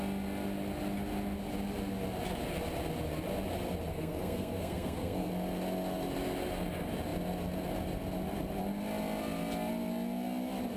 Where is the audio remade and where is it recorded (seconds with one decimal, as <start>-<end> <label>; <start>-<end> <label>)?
0.0-3.9 recorded; 3.9-5.3 remade; 5.3-10.8 recorded

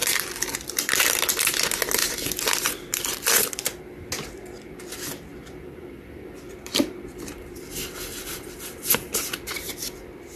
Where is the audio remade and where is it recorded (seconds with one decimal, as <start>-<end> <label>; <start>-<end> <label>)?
0.0-1.4 remade; 1.4-2.0 recorded; 2.0-3.8 remade; 3.8-5.3 recorded; 5.3-9.7 remade; 9.7-10.4 recorded